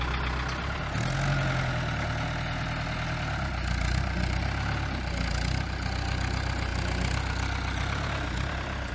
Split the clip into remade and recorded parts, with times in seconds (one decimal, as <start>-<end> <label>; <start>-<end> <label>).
0.0-8.9 recorded